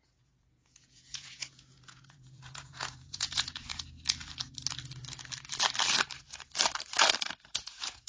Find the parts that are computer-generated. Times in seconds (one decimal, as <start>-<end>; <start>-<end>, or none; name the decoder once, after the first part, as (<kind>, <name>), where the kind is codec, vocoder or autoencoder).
0.0-3.7 (vocoder, Vocos); 7.4-8.1